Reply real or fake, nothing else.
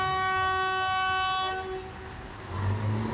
real